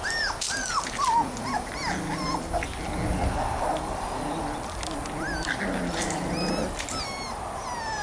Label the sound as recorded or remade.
recorded